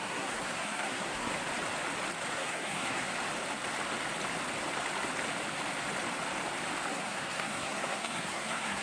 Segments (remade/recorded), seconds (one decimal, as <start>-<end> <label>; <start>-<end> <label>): 0.0-1.3 remade; 1.3-2.3 recorded; 2.3-3.1 remade; 3.1-6.9 recorded; 6.9-8.8 remade